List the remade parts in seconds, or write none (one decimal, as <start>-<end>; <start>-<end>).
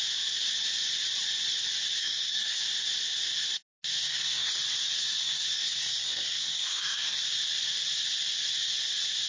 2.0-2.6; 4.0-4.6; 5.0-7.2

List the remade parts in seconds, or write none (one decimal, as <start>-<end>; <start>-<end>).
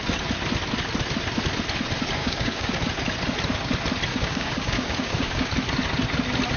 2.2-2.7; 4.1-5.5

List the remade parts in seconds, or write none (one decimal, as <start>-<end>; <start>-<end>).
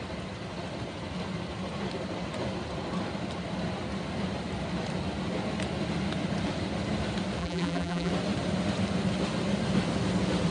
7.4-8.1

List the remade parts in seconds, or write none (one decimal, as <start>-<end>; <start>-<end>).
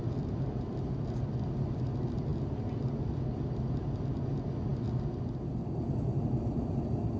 none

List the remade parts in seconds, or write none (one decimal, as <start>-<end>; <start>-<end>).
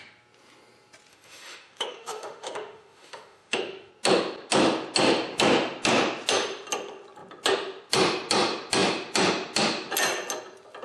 1.1-3.9